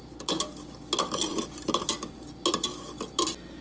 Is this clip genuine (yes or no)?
yes